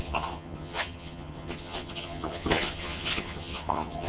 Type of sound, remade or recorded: remade